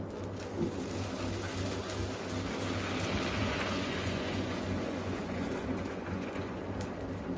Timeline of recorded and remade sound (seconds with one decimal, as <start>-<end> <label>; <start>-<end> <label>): 0.0-3.4 recorded; 3.4-6.6 remade; 6.6-7.4 recorded